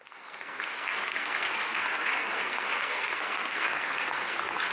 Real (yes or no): no